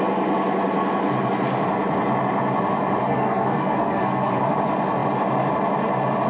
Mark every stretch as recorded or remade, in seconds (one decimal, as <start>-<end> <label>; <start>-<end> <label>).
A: 0.0-3.0 recorded; 3.0-4.4 remade; 4.4-6.3 recorded